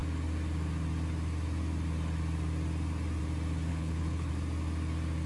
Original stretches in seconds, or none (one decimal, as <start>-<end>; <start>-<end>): 0.0-3.7; 4.3-5.3